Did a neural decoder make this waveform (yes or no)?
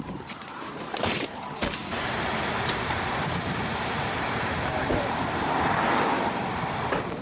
yes